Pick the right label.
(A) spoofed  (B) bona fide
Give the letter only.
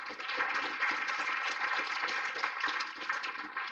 B